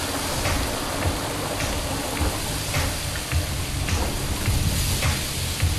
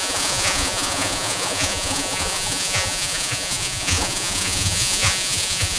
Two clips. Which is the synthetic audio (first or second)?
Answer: second